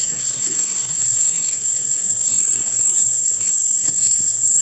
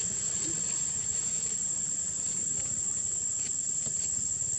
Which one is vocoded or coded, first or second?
first